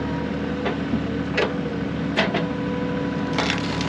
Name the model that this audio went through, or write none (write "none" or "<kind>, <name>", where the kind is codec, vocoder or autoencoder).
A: none